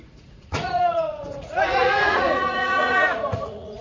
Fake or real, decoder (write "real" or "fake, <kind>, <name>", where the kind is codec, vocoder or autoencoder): fake, vocoder, Vocos